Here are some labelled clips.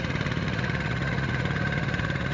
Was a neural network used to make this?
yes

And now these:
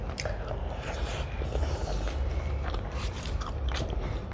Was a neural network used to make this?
yes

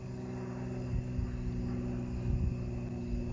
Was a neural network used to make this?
no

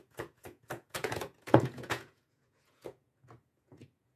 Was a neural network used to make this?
yes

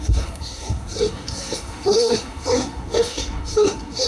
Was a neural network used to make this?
yes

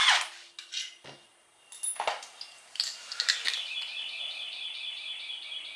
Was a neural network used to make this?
no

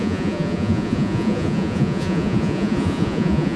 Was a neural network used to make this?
yes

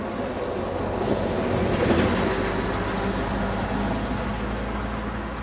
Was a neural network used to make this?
no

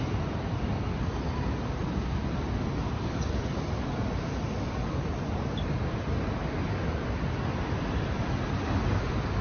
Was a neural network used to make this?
no